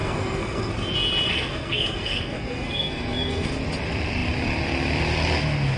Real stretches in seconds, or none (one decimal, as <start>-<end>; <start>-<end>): 0.7-1.3; 3.5-5.8